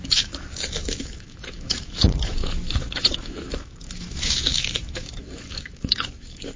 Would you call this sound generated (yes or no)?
yes